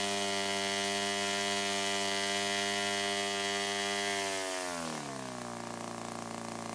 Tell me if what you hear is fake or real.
real